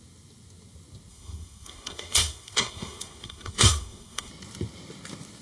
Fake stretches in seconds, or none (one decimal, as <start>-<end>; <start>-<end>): 1.1-4.3